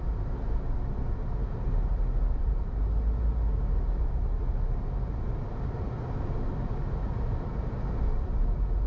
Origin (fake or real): real